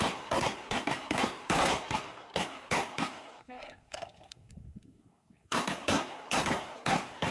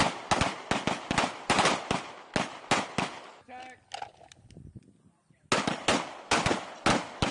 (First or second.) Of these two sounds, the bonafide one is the second